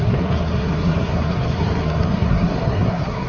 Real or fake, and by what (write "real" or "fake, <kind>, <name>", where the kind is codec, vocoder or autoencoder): fake, codec, SNAC